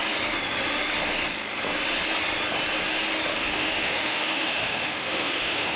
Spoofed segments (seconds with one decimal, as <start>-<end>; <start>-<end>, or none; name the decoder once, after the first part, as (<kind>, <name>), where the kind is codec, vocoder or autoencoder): 3.3-5.8 (autoencoder, DAC-VAE)